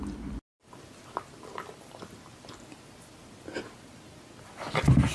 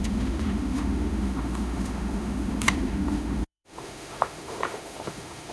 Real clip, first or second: first